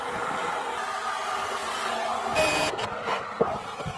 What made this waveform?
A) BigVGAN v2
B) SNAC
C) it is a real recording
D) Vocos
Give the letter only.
C